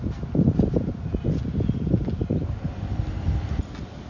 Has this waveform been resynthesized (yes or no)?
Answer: no